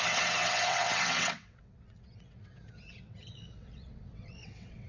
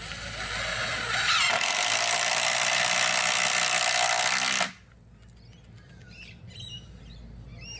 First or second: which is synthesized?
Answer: first